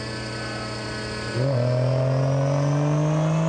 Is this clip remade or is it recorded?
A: recorded